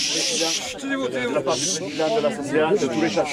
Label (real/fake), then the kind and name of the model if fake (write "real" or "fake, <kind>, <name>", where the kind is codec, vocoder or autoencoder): real